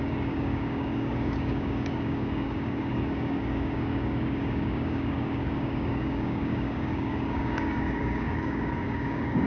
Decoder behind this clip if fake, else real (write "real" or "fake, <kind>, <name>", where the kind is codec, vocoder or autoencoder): fake, codec, DAC